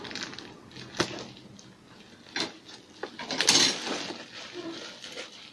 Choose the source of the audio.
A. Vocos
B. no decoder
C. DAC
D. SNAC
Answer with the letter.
B